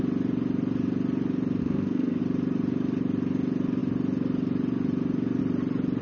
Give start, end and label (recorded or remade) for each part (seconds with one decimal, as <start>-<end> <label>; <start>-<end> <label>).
0.0-1.6 recorded; 1.6-2.2 remade; 2.2-6.0 recorded